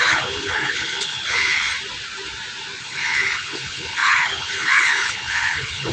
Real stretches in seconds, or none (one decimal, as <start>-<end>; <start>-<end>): 1.7-2.8